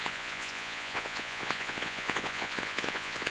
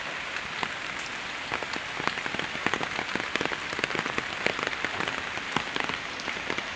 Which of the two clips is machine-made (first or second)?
first